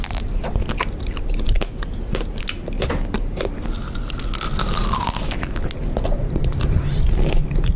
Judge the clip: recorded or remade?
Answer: recorded